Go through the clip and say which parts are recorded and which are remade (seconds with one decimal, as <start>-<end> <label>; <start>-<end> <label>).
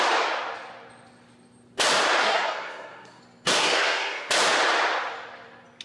0.0-2.2 recorded; 2.2-3.2 remade; 3.2-3.6 recorded; 3.6-4.3 remade; 4.3-5.8 recorded